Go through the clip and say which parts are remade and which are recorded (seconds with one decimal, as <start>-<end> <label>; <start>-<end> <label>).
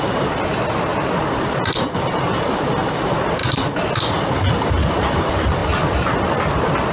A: 0.0-0.9 recorded; 0.9-1.7 remade; 1.7-6.9 recorded